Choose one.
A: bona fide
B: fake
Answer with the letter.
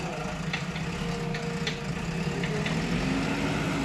A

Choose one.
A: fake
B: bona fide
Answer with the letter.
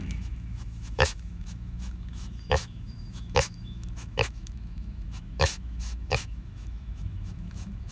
A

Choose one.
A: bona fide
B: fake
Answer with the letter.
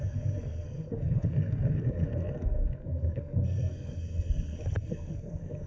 B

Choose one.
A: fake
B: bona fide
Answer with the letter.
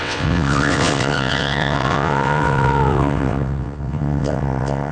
A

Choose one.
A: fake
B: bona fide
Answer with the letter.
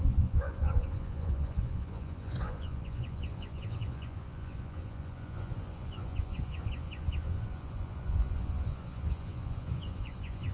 A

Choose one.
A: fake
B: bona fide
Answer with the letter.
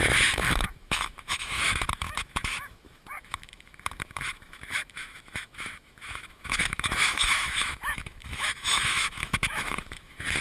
A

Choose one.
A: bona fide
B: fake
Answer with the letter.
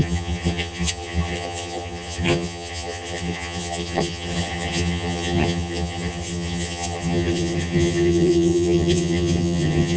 B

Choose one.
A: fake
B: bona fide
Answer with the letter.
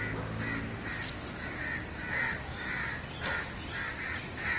B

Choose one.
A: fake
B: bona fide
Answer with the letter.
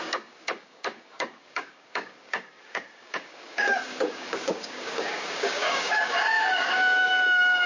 A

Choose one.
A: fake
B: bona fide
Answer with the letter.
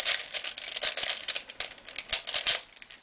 B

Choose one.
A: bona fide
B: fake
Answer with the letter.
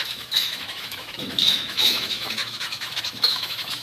B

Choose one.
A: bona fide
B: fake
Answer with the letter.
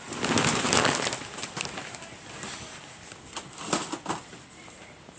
A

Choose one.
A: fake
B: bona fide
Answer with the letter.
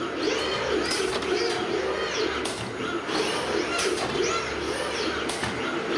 B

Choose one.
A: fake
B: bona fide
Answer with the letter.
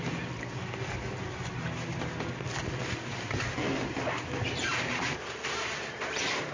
B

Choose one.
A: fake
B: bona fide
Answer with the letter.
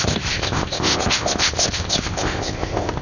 A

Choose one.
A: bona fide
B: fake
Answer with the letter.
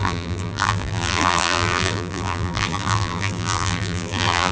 B